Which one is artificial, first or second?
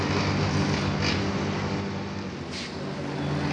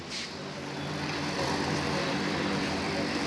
second